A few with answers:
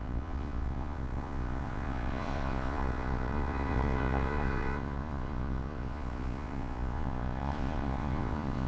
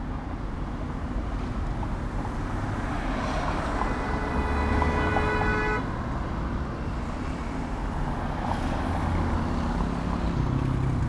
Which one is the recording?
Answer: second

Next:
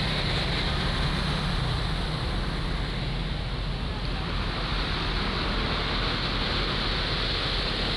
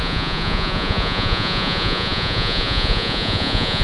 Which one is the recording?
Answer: first